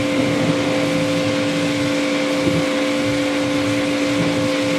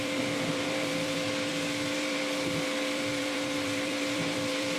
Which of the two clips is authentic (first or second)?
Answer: first